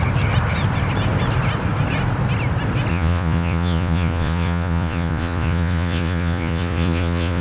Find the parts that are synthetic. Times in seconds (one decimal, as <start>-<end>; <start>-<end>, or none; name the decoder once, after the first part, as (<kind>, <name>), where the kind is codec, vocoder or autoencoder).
2.9-7.4 (vocoder, Vocos)